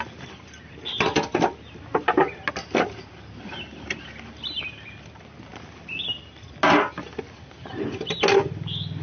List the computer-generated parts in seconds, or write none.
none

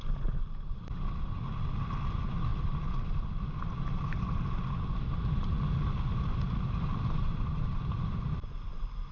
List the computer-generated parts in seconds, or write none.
none

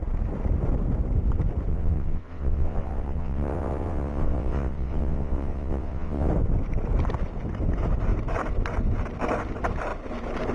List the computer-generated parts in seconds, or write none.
1.7-6.3 (vocoder, WaveNeXt)

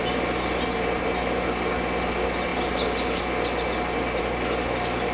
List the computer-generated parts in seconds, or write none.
none

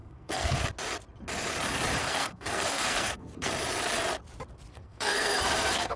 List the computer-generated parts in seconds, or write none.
0.0-0.6 (codec, SNAC); 2.0-3.5; 4.7-6.0

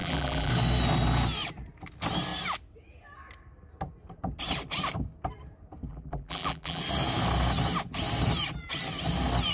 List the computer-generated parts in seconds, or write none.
0.0-0.5 (vocoder, BigVGAN v2); 5.9-6.8